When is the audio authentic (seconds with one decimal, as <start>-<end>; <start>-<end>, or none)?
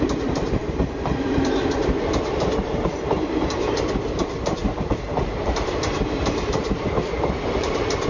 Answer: none